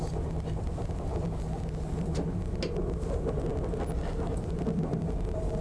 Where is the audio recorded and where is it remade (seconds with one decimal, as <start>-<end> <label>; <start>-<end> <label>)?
0.0-5.6 recorded